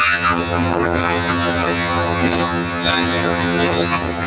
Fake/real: fake